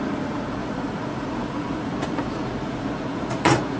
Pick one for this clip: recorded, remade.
remade